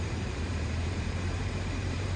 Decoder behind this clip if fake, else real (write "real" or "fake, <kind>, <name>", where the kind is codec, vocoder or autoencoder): fake, vocoder, BigVGAN v2